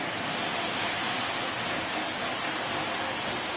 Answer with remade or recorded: recorded